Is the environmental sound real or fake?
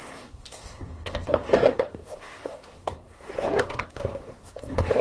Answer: fake